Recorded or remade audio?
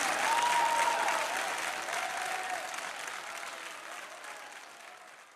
recorded